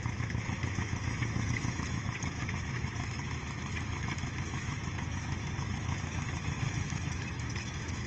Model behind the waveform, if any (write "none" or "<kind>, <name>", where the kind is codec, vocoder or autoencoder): autoencoder, DAC-VAE